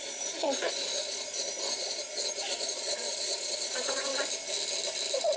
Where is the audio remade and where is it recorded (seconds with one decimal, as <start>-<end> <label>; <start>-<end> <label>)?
0.0-4.1 remade; 4.1-5.4 recorded